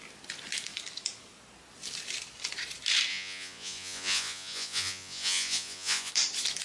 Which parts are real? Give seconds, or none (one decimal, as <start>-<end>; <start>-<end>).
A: 0.0-3.1; 6.1-6.6